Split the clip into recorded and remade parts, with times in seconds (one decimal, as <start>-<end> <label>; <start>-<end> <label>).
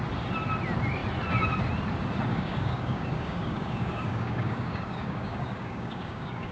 0.0-2.3 recorded; 2.3-6.5 remade